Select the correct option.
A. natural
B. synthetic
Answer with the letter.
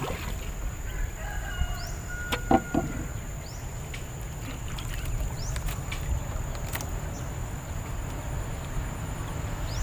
A